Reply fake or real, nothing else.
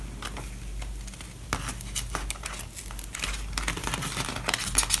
real